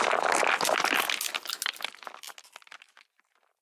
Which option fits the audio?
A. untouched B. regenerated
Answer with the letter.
A